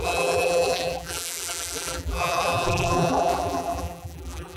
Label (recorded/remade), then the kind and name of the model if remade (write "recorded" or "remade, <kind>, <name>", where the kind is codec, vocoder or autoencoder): remade, vocoder, BigVGAN v2